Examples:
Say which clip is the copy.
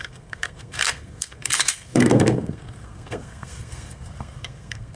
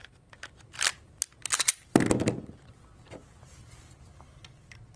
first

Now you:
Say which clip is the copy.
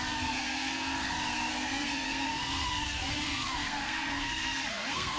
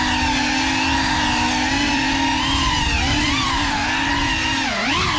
first